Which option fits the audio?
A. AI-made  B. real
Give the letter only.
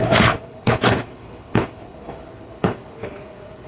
A